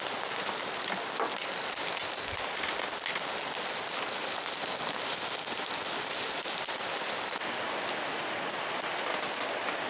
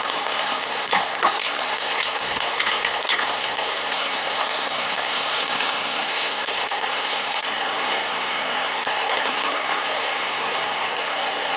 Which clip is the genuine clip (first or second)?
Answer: first